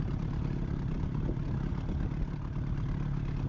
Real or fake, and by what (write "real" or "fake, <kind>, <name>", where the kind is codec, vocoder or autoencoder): real